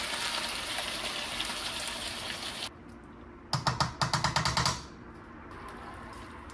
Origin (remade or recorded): recorded